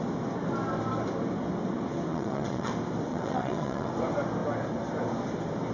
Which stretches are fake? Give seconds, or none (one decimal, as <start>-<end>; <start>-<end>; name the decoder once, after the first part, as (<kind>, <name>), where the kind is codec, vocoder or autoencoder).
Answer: 2.1-2.7 (vocoder, WaveNeXt); 3.1-3.9